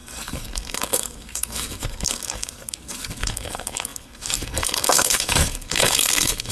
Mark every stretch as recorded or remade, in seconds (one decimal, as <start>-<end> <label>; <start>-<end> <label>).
0.0-6.5 remade